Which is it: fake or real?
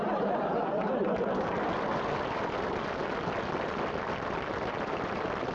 real